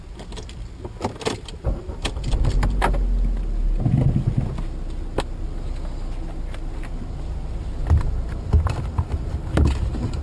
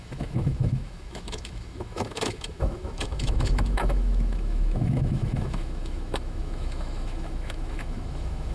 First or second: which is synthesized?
second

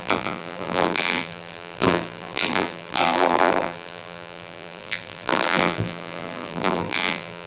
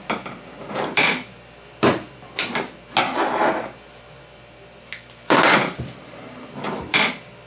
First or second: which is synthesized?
first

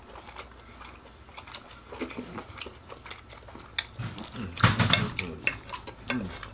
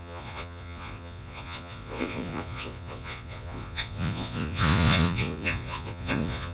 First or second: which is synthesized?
second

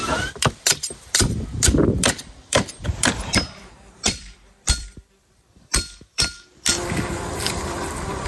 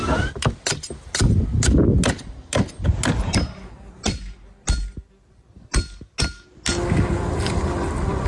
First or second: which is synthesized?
first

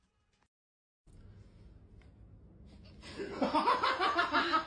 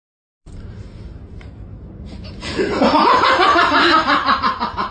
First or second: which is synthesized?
second